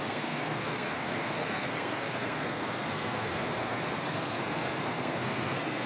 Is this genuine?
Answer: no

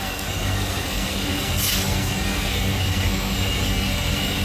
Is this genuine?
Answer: no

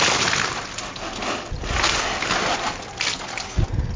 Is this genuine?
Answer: yes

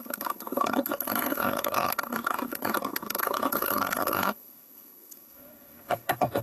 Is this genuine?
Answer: no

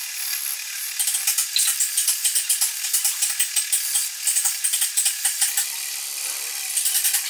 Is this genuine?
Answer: yes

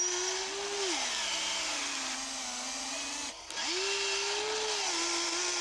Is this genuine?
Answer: yes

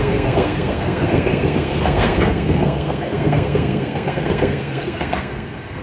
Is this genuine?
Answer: no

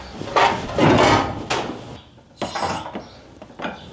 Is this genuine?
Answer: yes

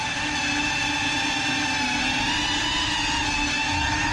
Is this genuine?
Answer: yes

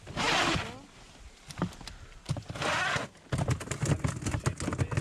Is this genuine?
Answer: yes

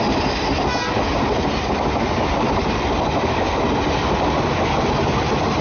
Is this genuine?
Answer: yes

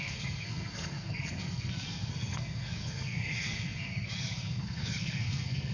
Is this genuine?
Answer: no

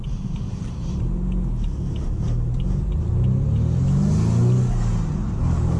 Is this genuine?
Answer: yes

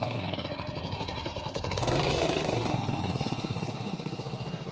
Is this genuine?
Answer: no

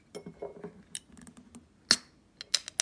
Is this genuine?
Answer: yes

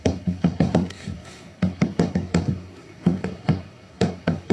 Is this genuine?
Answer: no